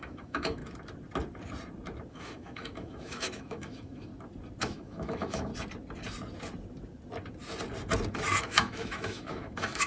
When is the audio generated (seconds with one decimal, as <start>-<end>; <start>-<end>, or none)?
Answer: 0.0-0.6; 2.1-4.1; 4.6-5.5; 8.4-9.9